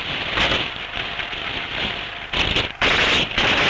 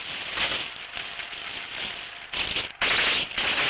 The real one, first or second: second